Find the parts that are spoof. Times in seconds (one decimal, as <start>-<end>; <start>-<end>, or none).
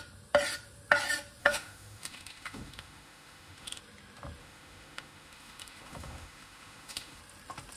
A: 1.4-3.8; 4.4-7.2